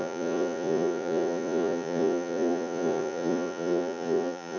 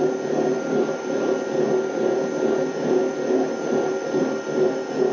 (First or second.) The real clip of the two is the second